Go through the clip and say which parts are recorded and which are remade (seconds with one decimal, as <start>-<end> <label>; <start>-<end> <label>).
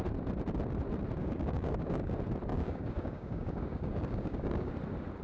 0.0-1.2 recorded; 1.2-2.1 remade; 2.1-2.5 recorded; 2.5-4.7 remade; 4.7-5.2 recorded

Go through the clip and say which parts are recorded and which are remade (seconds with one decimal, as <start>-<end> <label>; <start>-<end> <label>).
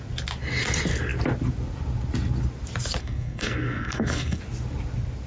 0.0-3.0 recorded; 3.0-4.4 remade; 4.4-5.3 recorded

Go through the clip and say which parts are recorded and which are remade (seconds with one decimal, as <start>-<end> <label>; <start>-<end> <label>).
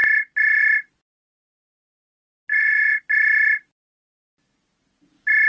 0.0-2.5 recorded; 2.5-3.0 remade; 3.0-5.5 recorded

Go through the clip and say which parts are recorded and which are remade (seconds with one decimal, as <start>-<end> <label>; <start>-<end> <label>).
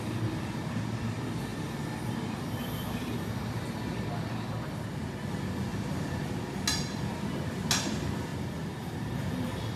0.0-1.5 recorded; 1.5-3.6 remade; 3.6-5.7 recorded; 5.7-6.3 remade; 6.3-9.8 recorded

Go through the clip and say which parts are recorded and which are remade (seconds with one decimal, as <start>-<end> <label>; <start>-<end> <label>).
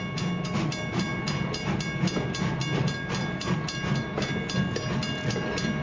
0.0-5.8 recorded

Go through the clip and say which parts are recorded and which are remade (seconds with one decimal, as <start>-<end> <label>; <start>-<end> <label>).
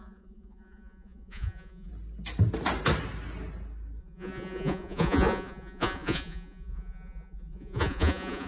0.0-1.9 remade; 1.9-4.0 recorded; 4.0-8.5 remade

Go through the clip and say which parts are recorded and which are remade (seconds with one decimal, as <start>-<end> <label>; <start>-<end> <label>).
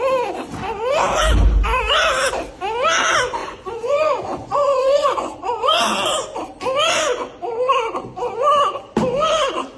0.0-3.4 recorded; 3.4-5.8 remade; 5.8-9.8 recorded